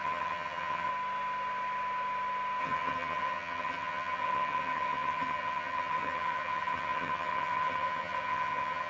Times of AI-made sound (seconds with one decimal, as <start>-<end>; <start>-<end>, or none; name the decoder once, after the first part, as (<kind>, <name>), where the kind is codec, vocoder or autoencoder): 0.0-0.9 (vocoder, HiFi-GAN); 2.6-8.9